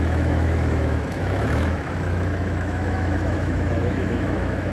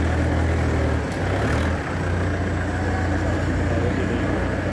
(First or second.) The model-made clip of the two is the first